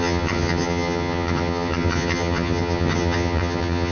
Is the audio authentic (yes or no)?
no